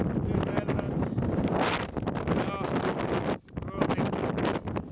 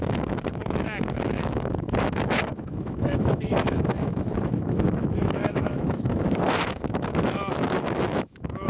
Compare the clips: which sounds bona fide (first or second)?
first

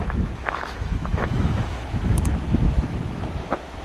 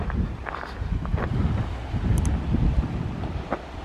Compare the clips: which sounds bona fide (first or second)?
second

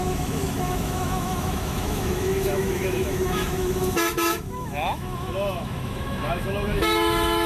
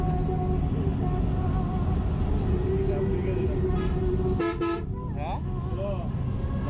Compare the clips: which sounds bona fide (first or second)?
second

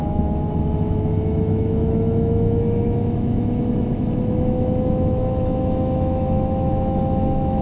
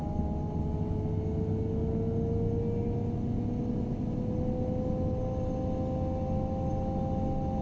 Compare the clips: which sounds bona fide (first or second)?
second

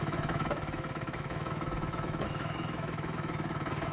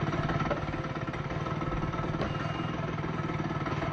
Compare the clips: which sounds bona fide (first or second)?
second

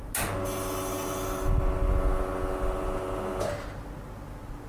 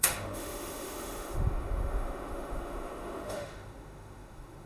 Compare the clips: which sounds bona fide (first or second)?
first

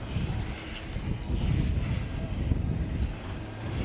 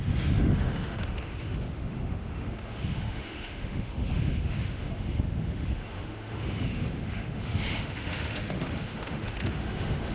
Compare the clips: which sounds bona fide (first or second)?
first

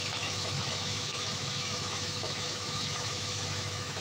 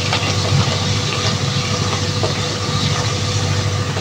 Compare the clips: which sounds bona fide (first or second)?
second